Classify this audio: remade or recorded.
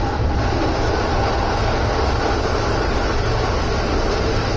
recorded